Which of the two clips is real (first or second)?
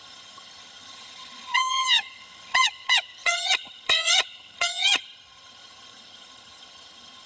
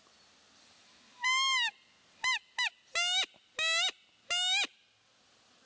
second